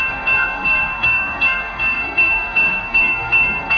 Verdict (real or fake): fake